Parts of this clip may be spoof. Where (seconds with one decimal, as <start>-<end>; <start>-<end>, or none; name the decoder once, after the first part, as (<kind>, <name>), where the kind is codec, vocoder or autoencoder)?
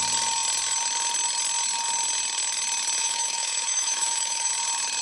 3.0-4.5 (autoencoder, DAC-VAE)